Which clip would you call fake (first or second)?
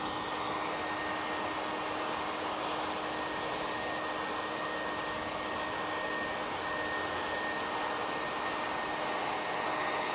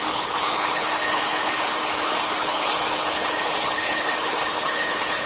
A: second